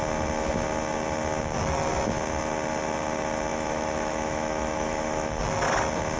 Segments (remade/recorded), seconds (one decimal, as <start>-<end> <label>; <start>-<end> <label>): 0.0-3.5 recorded; 3.5-5.4 remade; 5.4-6.2 recorded